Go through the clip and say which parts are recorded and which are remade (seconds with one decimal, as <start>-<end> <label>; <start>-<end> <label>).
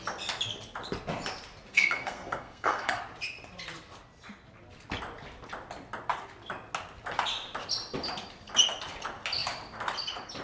0.0-1.7 recorded; 1.7-3.0 remade; 3.0-10.4 recorded